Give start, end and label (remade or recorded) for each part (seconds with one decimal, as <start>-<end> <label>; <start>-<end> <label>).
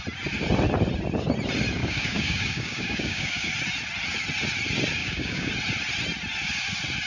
0.0-1.8 recorded; 1.8-3.5 remade; 3.5-5.0 recorded; 5.0-5.5 remade; 5.5-7.1 recorded